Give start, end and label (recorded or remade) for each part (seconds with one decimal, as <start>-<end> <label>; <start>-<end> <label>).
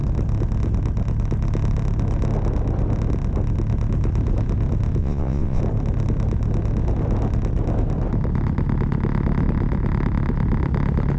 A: 0.0-5.0 recorded; 5.0-5.6 remade; 5.6-11.2 recorded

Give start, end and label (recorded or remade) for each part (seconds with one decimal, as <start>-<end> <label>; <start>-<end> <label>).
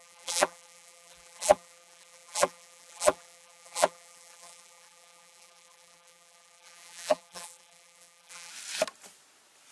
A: 0.0-8.5 remade; 8.5-9.7 recorded